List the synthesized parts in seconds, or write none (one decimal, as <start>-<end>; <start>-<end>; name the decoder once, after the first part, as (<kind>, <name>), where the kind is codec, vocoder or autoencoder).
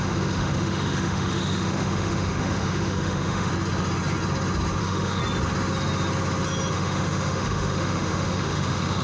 0.0-3.5 (autoencoder, DAC-VAE); 4.8-5.2; 6.7-9.0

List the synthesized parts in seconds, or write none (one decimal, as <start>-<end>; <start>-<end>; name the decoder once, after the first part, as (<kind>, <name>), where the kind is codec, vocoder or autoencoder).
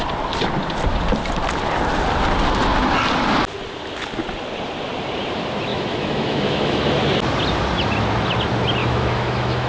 5.7-6.8 (autoencoder, DAC-VAE); 8.8-9.7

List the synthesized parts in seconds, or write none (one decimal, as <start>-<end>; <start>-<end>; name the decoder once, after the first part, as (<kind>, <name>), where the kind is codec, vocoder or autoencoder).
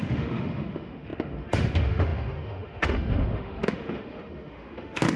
0.0-5.2 (autoencoder, DAC-VAE)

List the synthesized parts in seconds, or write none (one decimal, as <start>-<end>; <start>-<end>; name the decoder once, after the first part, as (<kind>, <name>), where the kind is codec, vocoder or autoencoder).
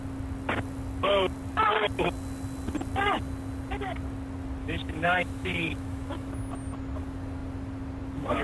4.6-6.3 (autoencoder, DAC-VAE)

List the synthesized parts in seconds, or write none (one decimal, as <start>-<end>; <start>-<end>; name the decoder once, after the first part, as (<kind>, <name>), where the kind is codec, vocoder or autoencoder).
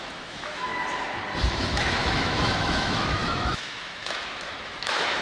0.0-0.7 (autoencoder, DAC-VAE); 1.5-5.2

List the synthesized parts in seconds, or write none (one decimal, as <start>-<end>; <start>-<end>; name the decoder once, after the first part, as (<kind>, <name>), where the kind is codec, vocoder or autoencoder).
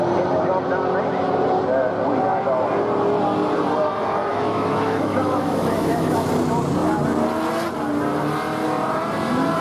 4.3-6.3 (autoencoder, DAC-VAE)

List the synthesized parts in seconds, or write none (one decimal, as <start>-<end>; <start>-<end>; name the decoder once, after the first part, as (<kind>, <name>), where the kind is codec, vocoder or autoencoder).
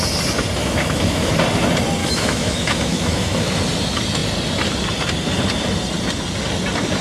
0.6-1.3 (autoencoder, DAC-VAE); 2.0-3.5